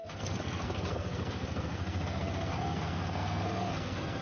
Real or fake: fake